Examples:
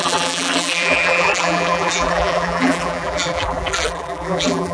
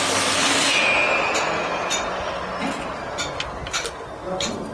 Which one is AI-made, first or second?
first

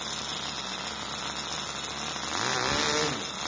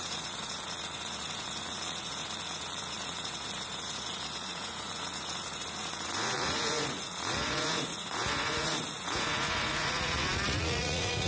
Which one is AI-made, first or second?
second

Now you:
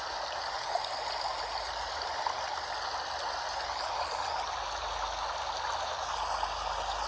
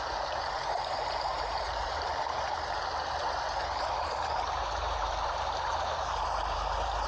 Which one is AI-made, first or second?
second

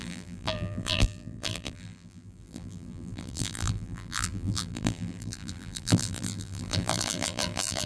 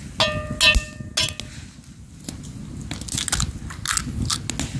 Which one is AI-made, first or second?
first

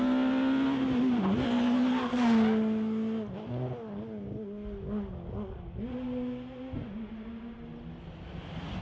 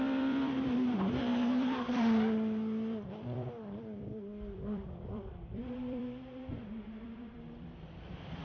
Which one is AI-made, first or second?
second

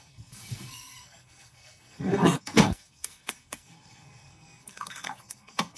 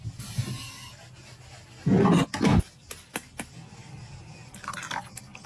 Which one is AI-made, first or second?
first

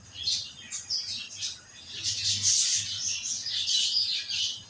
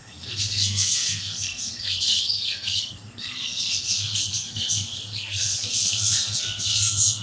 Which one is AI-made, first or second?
second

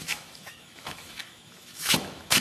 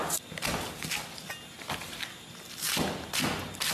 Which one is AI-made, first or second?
first